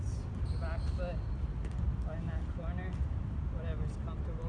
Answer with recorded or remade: recorded